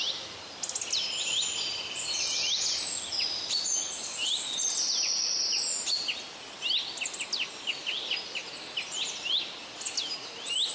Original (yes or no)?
yes